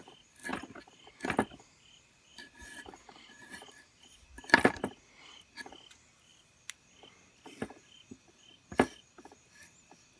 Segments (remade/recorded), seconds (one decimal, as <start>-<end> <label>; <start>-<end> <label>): 0.0-10.2 recorded